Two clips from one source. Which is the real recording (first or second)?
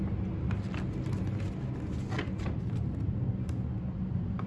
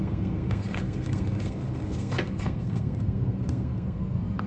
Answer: first